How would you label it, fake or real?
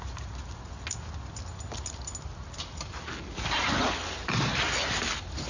real